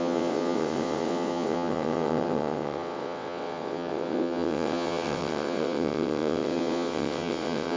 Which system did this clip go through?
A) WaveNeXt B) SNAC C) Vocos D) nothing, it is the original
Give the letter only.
A